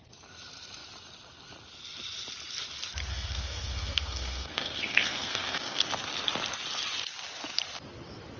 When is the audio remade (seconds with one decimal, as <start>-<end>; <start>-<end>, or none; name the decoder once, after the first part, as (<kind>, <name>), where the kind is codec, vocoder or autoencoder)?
3.1-5.8 (codec, SNAC)